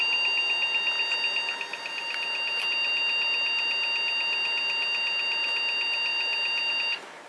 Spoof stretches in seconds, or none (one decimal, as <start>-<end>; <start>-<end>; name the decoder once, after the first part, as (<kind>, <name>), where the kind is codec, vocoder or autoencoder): none